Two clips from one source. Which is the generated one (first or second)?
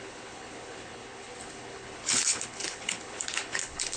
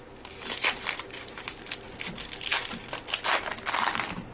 first